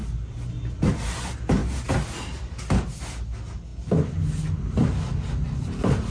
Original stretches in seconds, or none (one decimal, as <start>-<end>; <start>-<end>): 0.0-6.1